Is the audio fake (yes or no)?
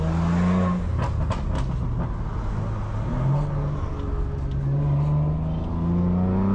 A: no